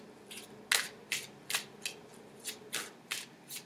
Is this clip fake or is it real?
real